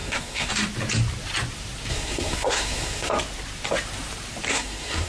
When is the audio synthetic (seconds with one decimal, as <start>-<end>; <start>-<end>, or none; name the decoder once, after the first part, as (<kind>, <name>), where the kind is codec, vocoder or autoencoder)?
0.0-0.5 (codec, SNAC); 1.9-3.1; 4.5-5.1